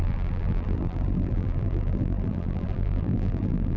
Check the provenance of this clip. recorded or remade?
remade